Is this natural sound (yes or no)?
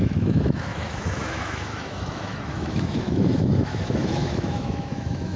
no